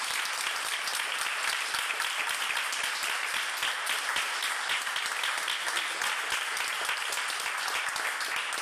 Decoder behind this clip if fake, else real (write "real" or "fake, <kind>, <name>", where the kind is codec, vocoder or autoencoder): fake, vocoder, BigVGAN v2